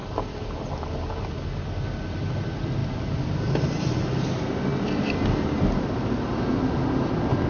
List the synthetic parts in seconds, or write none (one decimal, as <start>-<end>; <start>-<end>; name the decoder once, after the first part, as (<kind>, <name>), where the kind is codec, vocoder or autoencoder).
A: none